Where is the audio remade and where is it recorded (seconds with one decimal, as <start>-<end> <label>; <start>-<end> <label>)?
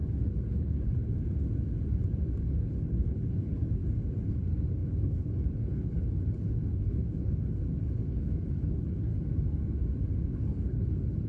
0.0-1.2 remade; 1.2-2.4 recorded; 2.4-3.8 remade; 3.8-4.3 recorded; 4.3-9.1 remade; 9.1-10.3 recorded; 10.3-11.3 remade